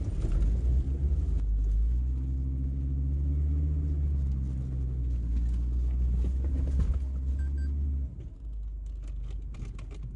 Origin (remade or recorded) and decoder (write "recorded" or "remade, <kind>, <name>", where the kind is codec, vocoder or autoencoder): recorded